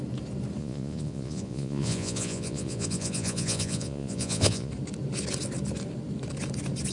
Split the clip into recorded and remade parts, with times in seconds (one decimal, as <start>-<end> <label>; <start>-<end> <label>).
0.0-0.6 recorded; 0.6-4.7 remade; 4.7-6.9 recorded